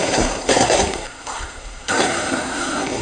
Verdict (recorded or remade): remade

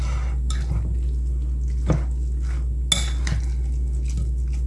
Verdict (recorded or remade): recorded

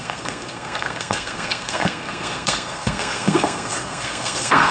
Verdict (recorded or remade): remade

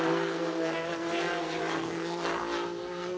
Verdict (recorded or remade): remade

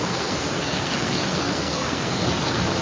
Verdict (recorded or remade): remade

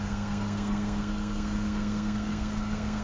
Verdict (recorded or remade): remade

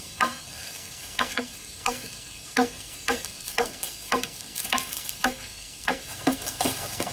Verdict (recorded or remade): remade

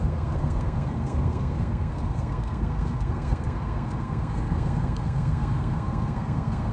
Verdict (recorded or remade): remade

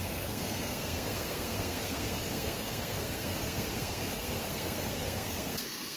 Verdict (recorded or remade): remade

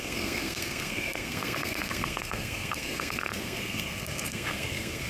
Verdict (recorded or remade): remade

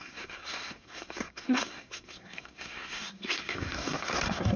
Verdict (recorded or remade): remade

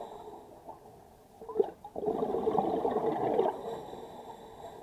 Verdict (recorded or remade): recorded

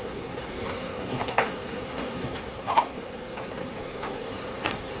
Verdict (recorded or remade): remade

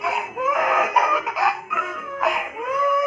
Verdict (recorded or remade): remade